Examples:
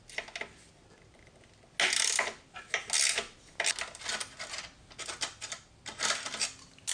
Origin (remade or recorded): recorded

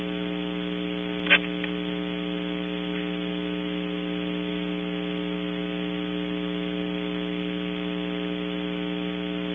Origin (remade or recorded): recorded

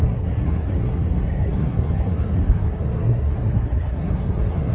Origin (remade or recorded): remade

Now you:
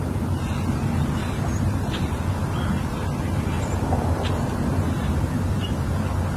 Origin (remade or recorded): recorded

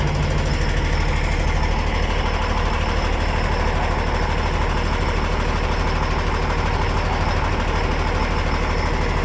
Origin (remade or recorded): recorded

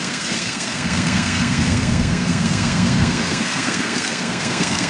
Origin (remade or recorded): remade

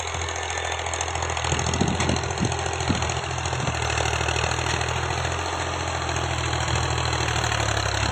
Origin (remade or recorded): recorded